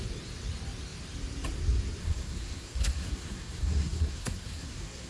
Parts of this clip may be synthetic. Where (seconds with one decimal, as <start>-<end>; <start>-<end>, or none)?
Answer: 2.0-5.1